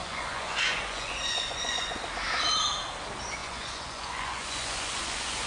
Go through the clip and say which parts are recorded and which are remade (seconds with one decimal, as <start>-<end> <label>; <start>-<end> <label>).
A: 0.0-2.0 remade; 2.0-3.4 recorded; 3.4-5.5 remade